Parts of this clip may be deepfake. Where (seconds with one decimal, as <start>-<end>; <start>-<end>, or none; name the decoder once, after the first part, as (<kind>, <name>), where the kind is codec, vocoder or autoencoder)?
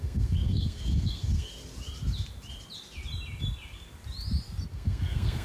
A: 0.0-1.5 (codec, SNAC); 4.7-5.4